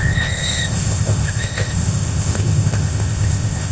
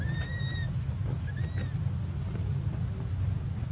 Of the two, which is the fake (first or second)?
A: first